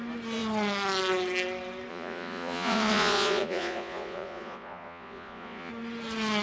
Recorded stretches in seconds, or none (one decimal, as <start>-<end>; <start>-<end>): 0.0-1.9; 5.7-6.4